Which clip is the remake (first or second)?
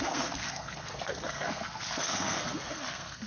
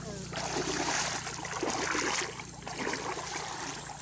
first